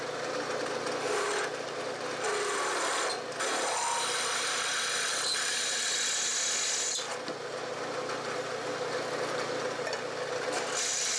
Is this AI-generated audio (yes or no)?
no